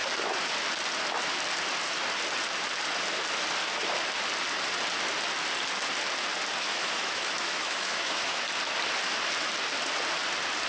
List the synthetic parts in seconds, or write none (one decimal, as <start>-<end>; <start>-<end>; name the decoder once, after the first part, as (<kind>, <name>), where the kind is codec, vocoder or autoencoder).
6.7-8.4 (autoencoder, DAC-VAE)